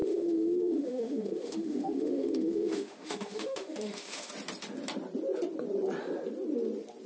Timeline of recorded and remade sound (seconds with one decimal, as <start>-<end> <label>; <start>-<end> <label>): 0.0-4.3 remade; 4.3-7.1 recorded